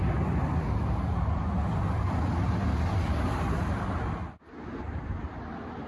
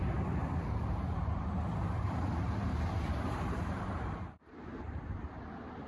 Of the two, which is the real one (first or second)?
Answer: first